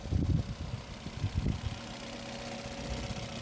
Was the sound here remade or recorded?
recorded